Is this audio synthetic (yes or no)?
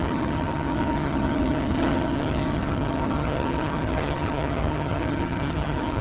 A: yes